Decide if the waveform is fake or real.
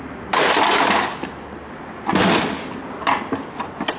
real